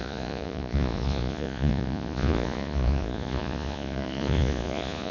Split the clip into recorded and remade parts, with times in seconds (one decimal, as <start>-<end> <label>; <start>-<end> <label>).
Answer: 0.0-5.1 remade